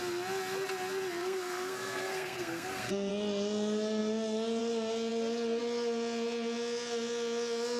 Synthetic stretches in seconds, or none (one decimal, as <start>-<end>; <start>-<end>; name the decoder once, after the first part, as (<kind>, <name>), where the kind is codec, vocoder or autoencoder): 1.2-3.1 (codec, SNAC)